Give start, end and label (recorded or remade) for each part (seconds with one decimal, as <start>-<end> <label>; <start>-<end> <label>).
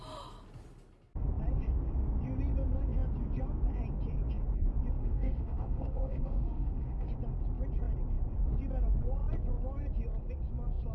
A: 0.0-5.0 recorded; 5.0-7.1 remade; 7.1-10.9 recorded